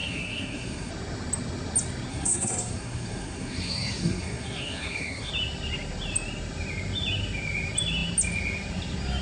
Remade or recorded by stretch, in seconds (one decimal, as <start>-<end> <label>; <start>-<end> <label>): 0.0-0.9 remade; 0.9-2.1 recorded; 2.1-5.3 remade; 5.3-9.2 recorded